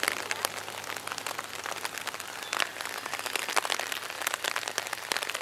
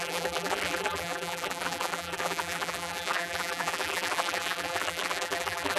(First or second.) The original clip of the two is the first